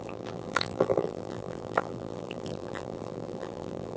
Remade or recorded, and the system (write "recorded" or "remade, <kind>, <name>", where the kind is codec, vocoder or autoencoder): remade, vocoder, BigVGAN v2